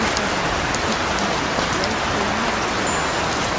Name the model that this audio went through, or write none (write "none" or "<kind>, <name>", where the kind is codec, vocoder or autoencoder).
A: none